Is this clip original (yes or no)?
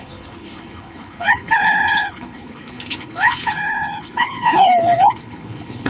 no